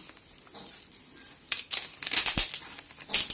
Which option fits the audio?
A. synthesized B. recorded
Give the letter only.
B